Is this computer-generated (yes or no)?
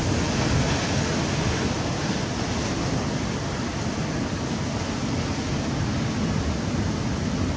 no